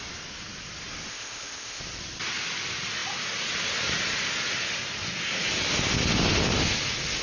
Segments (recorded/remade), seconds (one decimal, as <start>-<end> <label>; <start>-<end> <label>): 0.0-1.1 recorded; 1.1-1.8 remade; 1.8-7.2 recorded